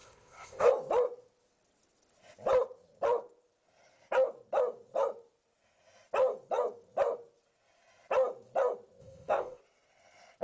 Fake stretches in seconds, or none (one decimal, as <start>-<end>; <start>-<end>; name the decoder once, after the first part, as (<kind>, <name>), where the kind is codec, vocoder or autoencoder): 0.0-0.7 (codec, ZipCodec); 9.0-9.6